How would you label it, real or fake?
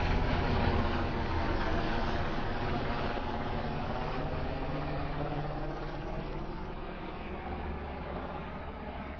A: fake